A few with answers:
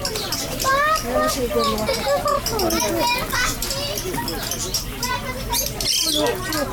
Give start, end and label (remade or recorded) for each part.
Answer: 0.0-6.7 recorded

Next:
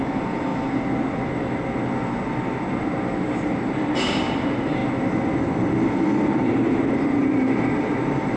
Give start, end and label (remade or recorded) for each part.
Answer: 0.0-0.5 remade; 0.5-3.4 recorded; 3.4-4.8 remade; 4.8-6.3 recorded; 6.3-8.4 remade

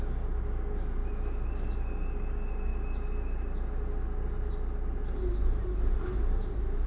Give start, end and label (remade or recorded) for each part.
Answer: 0.0-1.0 remade; 1.0-1.8 recorded; 1.8-2.7 remade; 2.7-6.9 recorded

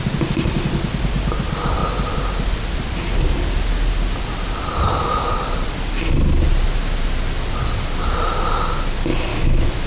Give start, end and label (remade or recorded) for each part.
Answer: 0.0-9.3 recorded; 9.3-9.9 remade

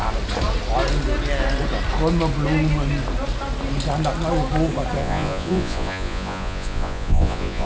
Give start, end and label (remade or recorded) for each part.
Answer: 0.0-5.0 recorded; 5.0-7.7 remade